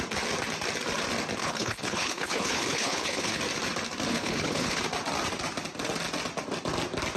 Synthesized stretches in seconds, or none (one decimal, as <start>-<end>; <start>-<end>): 1.4-3.4; 4.1-4.8